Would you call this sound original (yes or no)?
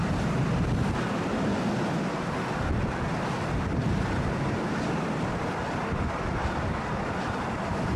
yes